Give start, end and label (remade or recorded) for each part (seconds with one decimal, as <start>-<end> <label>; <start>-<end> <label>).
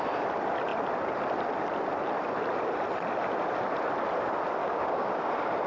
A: 0.0-4.6 recorded; 4.6-5.3 remade; 5.3-5.7 recorded